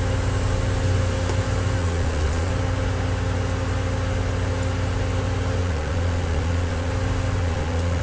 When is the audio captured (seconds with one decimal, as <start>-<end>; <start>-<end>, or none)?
0.0-1.8; 2.5-5.6; 6.9-7.4